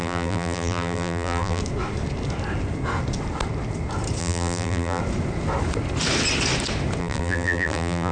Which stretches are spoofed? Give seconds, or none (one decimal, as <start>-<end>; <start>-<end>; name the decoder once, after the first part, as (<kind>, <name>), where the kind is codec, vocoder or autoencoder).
0.0-1.6 (vocoder, BigVGAN v2); 4.2-5.0; 7.0-8.1